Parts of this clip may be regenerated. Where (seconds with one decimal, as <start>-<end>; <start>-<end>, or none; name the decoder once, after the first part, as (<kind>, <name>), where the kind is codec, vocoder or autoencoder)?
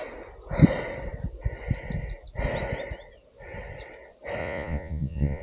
4.4-5.4 (vocoder, Vocos)